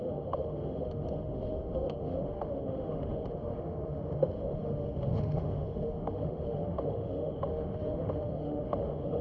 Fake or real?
fake